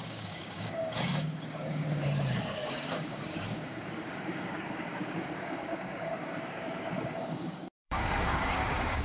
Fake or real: fake